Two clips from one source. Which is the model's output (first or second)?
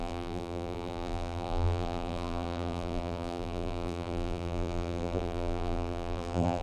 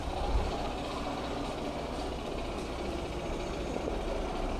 first